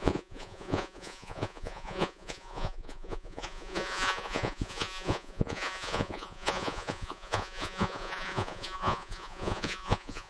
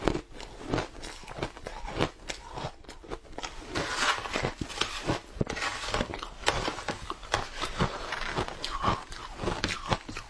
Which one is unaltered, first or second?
second